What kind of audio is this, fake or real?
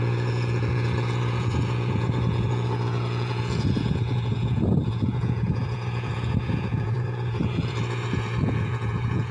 fake